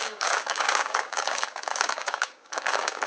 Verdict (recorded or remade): remade